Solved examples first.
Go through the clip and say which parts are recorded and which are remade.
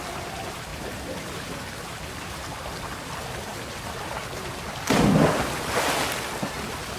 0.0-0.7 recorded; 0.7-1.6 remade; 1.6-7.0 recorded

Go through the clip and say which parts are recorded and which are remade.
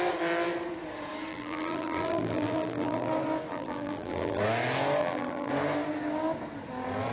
0.0-1.3 recorded; 1.3-3.1 remade; 3.1-3.5 recorded; 3.5-4.4 remade; 4.4-5.0 recorded; 5.0-5.5 remade; 5.5-7.1 recorded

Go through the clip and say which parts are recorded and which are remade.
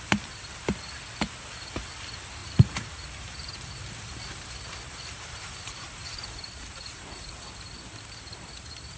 0.0-2.4 recorded; 2.4-7.4 remade; 7.4-8.3 recorded; 8.3-9.0 remade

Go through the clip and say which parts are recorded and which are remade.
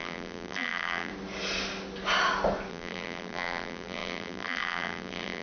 0.0-1.1 remade; 1.1-2.7 recorded; 2.7-5.4 remade